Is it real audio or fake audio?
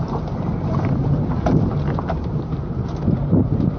fake